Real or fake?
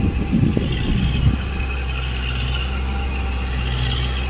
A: real